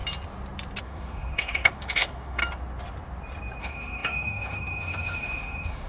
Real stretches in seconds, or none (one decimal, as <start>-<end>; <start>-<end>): 0.0-0.8; 2.4-3.6